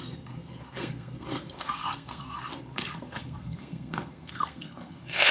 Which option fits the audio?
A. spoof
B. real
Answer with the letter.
A